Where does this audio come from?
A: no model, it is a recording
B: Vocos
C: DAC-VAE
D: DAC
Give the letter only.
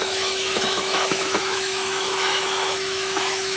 C